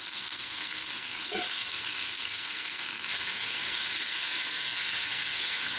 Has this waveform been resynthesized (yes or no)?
yes